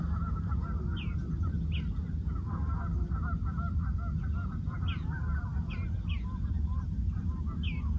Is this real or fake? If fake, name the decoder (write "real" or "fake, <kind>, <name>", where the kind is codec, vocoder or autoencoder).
real